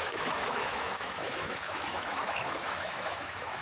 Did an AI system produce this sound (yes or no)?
yes